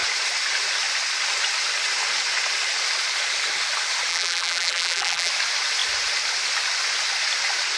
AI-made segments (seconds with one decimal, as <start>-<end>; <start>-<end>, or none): 4.1-5.3